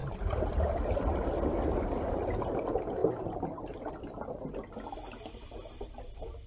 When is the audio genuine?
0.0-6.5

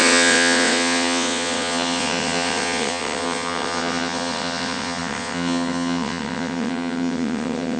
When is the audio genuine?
none

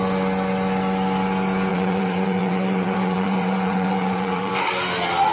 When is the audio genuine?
0.0-1.7; 4.5-5.3

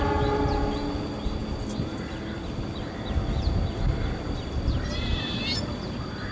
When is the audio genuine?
0.0-6.3

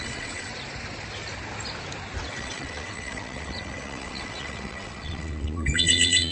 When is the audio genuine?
0.5-2.3

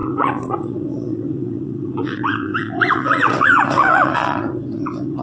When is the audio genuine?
none

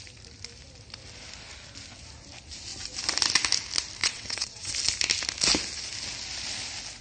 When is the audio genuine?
0.0-4.0; 4.7-7.0